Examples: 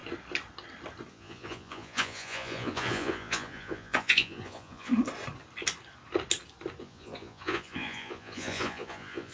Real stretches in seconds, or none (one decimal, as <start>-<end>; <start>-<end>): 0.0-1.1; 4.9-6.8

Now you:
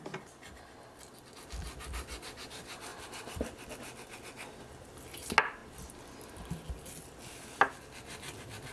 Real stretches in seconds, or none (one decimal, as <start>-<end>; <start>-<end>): 0.0-8.7

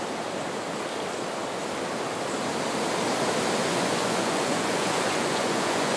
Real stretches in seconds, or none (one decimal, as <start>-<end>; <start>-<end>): 0.0-3.6

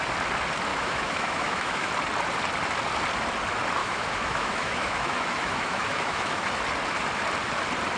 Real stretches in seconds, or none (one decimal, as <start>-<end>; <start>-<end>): 0.0-0.7; 1.9-3.8; 6.5-8.0